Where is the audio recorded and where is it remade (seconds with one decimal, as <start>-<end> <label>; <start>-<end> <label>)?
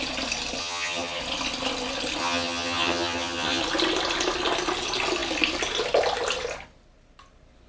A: 0.0-0.6 recorded; 0.6-1.2 remade; 1.2-2.2 recorded; 2.2-3.6 remade; 3.6-7.7 recorded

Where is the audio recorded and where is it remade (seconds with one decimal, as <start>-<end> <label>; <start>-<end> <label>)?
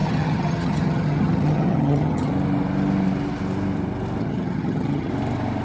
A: 0.0-2.3 remade; 2.3-4.2 recorded; 4.2-5.1 remade; 5.1-5.6 recorded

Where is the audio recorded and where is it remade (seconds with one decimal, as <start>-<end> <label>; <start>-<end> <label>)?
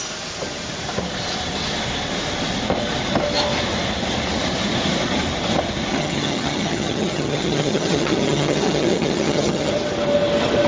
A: 0.0-5.9 recorded; 5.9-9.7 remade; 9.7-10.7 recorded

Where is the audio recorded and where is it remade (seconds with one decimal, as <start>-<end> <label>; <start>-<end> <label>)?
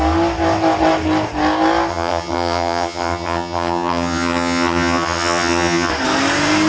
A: 0.0-1.9 recorded; 1.9-5.9 remade; 5.9-6.7 recorded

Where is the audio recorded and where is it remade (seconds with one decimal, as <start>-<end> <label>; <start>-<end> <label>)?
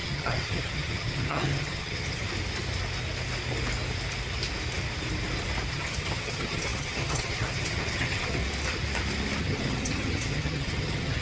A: 0.0-2.3 remade; 2.3-5.7 recorded; 5.7-8.4 remade; 8.4-9.4 recorded; 9.4-11.2 remade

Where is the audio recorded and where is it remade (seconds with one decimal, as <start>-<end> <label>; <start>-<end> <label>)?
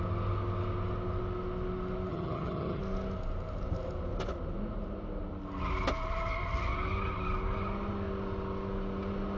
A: 0.0-2.1 recorded; 2.1-2.8 remade; 2.8-9.4 recorded